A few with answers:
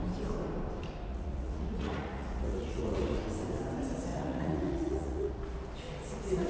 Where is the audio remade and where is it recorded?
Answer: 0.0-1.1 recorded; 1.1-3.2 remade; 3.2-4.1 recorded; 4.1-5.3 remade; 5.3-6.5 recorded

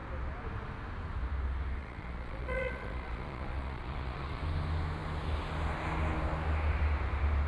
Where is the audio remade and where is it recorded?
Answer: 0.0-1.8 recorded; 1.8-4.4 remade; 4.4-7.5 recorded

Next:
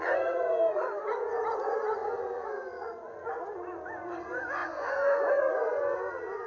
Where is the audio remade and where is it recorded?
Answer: 0.0-6.5 remade

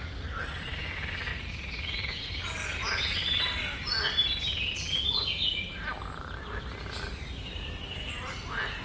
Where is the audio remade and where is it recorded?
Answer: 0.0-1.3 recorded; 1.3-2.3 remade; 2.3-8.8 recorded

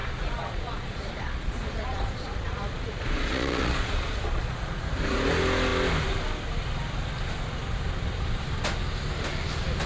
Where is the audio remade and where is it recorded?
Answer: 0.0-4.8 remade; 4.8-9.9 recorded

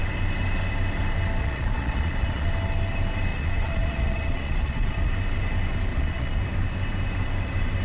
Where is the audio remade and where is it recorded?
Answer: 0.0-1.4 recorded; 1.4-2.5 remade; 2.5-3.3 recorded; 3.3-5.1 remade; 5.1-5.9 recorded; 5.9-6.4 remade; 6.4-7.8 recorded